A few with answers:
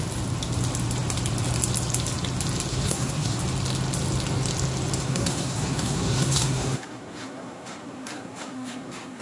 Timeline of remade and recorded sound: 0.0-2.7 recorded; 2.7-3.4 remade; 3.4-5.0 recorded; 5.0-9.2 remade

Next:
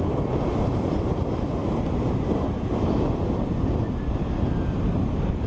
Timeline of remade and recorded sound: 0.0-5.5 recorded

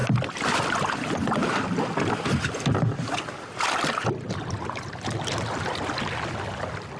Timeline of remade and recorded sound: 0.0-7.0 recorded